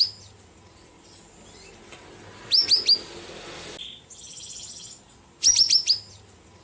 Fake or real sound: real